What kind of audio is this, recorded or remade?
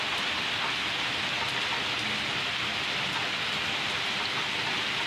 recorded